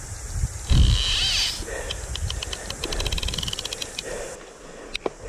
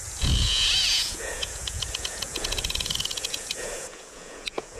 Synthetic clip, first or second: second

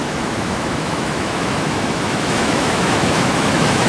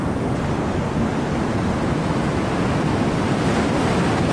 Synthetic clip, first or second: first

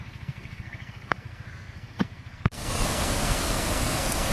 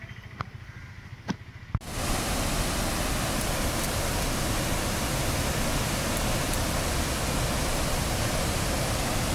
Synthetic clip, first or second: first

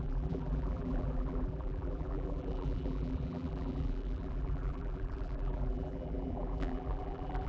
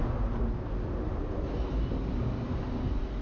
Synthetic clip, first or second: first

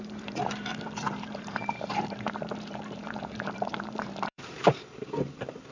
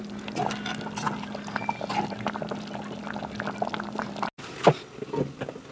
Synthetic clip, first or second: first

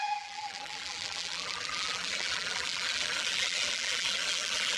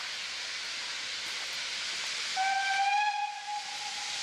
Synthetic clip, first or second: first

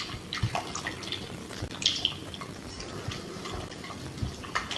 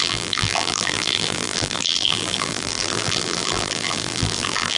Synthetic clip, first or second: second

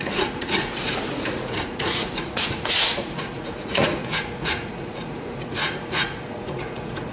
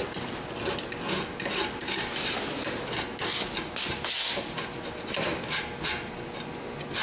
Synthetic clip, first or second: first